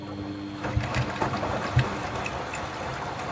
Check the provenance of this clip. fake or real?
real